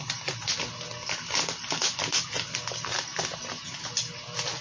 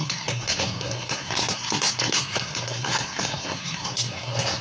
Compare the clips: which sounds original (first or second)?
first